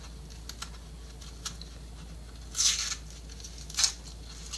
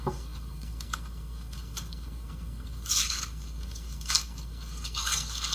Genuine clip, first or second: first